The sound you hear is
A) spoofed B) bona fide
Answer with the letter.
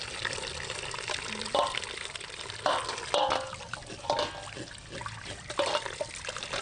B